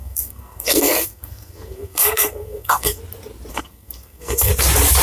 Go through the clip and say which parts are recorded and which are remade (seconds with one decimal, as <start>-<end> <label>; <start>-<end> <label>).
0.0-3.0 remade; 3.0-3.5 recorded; 3.5-4.5 remade; 4.5-5.0 recorded